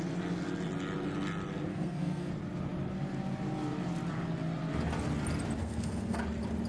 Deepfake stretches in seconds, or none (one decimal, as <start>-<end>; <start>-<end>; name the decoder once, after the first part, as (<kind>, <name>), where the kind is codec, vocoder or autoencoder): 1.7-2.3 (codec, SNAC); 5.6-6.2